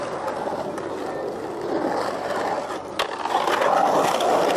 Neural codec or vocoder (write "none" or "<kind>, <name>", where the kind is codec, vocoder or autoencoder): none